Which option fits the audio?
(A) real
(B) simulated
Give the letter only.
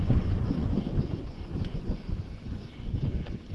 B